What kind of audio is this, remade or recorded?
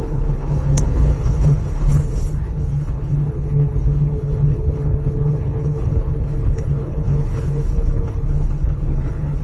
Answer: remade